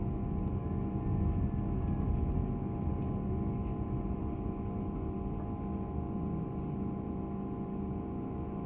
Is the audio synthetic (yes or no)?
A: no